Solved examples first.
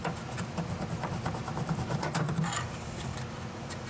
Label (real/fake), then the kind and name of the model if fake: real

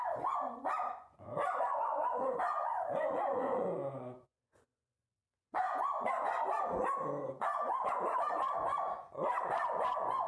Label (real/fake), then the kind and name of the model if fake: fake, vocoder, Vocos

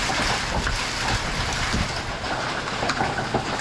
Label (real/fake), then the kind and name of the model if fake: real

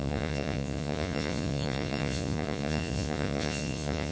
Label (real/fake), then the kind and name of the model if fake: fake, vocoder, Vocos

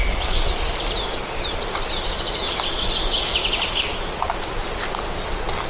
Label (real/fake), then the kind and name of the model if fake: real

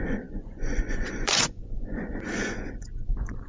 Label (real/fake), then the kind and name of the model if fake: fake, vocoder, Vocos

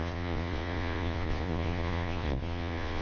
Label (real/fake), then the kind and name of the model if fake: fake, vocoder, Vocos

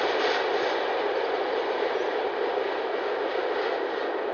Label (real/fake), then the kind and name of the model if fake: real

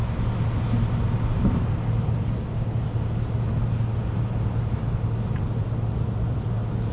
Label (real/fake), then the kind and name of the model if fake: real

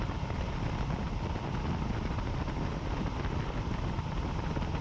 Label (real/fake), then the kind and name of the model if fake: real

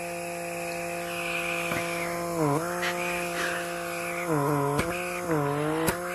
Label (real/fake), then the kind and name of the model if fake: real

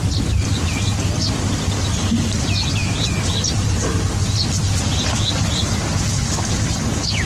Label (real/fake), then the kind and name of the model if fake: real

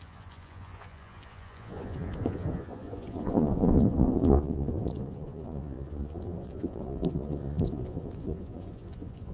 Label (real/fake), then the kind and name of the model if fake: fake, vocoder, Vocos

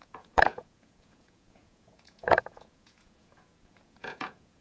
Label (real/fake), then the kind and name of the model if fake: fake, vocoder, Vocos